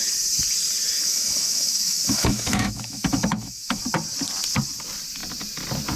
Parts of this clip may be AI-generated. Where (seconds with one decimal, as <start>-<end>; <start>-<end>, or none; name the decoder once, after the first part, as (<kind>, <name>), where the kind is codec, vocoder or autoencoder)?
0.9-3.8 (autoencoder, DAC-VAE)